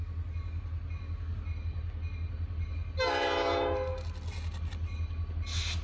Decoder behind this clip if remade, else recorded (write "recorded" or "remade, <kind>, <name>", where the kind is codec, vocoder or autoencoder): recorded